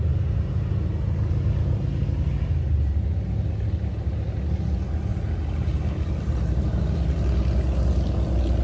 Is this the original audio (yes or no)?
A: yes